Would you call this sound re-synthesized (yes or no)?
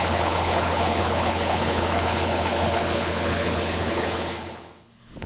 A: yes